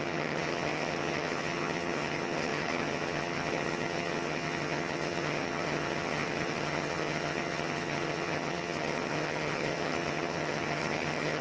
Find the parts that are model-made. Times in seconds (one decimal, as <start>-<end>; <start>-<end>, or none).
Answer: 0.0-11.4

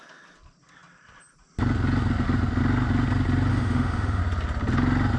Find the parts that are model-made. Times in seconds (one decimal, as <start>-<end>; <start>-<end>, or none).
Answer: 3.5-4.2

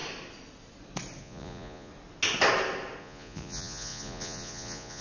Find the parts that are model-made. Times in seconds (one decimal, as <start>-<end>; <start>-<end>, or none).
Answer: 1.2-1.9; 3.0-5.0

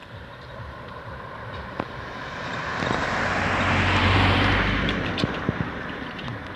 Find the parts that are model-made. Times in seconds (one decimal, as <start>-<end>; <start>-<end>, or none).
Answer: 0.0-2.7; 3.4-6.6